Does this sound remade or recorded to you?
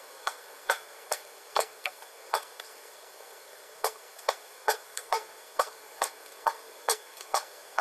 remade